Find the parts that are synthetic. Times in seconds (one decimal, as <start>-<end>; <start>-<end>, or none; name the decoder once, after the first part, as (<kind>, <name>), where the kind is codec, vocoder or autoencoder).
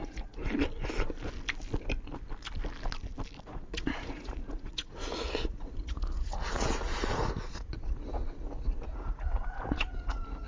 0.0-0.4 (vocoder, Vocos); 3.4-10.5